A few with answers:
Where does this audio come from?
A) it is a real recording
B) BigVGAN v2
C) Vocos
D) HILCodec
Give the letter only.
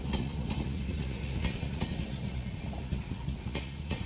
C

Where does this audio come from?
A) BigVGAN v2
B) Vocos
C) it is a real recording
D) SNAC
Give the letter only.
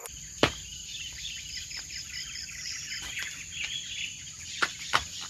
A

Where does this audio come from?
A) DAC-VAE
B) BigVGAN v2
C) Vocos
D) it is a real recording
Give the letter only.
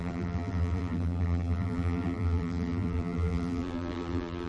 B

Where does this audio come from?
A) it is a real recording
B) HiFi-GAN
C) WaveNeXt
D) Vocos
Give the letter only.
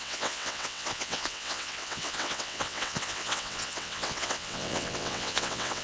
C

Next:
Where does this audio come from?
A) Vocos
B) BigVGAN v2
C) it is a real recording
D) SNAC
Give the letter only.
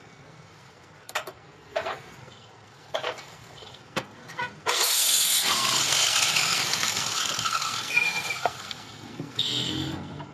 D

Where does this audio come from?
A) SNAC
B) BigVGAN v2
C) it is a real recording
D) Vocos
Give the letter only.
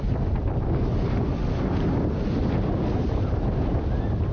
C